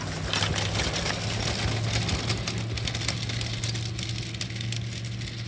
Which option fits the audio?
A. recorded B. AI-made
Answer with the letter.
A